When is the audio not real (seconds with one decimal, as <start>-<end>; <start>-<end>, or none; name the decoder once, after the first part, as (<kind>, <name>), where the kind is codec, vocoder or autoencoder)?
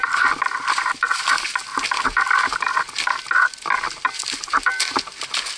none